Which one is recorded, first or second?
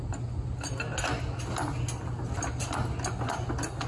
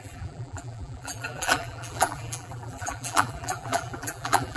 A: first